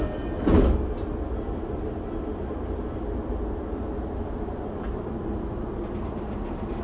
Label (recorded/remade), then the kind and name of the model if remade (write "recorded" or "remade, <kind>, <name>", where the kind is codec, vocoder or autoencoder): recorded